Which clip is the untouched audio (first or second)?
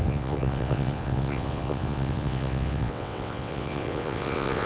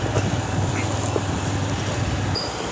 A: second